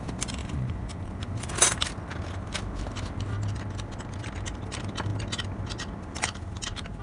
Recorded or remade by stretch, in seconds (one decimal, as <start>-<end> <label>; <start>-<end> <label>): 0.0-0.4 recorded; 0.4-1.5 remade; 1.5-7.0 recorded